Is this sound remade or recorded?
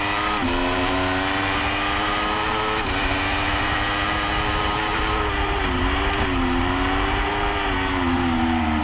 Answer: remade